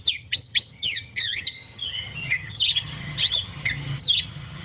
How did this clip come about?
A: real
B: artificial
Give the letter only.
B